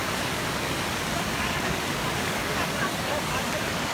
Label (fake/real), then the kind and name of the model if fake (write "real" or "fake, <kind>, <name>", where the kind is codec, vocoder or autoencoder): fake, codec, DAC